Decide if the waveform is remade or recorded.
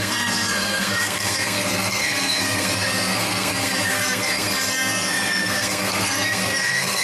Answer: remade